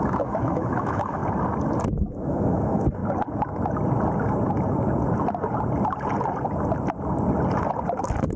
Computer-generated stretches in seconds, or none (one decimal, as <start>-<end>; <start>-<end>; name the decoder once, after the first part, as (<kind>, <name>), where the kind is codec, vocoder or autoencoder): 0.0-1.2 (autoencoder, DAC-VAE); 1.8-3.0; 8.0-8.4